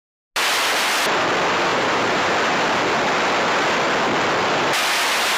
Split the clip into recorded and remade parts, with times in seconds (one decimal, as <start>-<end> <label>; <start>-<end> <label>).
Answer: 0.0-1.7 recorded; 1.7-2.3 remade; 2.3-5.4 recorded